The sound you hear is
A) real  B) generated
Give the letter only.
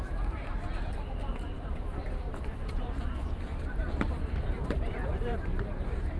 B